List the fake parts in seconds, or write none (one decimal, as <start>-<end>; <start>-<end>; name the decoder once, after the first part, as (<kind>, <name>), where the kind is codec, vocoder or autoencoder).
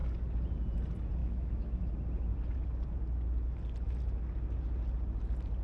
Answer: 1.2-1.9 (autoencoder, DAC-VAE)